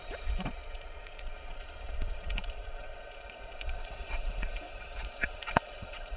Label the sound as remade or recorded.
remade